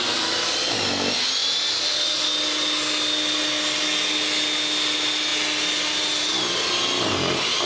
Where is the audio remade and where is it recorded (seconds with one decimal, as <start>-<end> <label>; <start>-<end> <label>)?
0.0-7.7 recorded